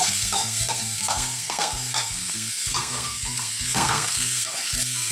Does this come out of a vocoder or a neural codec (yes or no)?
yes